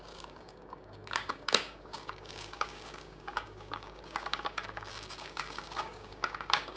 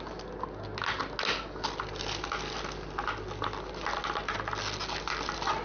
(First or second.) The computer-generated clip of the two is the first